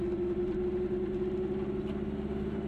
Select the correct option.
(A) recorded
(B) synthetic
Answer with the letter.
A